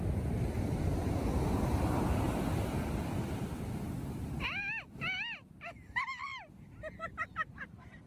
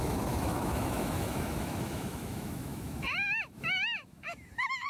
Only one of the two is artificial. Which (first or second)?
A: second